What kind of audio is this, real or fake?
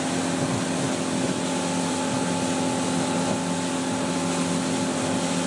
real